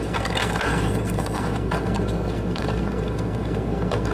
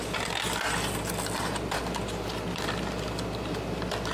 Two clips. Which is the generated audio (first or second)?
first